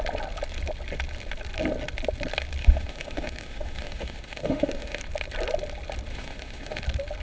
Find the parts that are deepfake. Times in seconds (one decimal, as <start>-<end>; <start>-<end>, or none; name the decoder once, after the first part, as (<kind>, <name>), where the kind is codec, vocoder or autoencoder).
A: 2.6-5.0 (autoencoder, DAC-VAE); 6.1-6.8